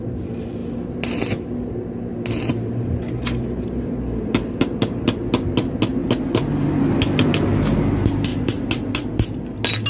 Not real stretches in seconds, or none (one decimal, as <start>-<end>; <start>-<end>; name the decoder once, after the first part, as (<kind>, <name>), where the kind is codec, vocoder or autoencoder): none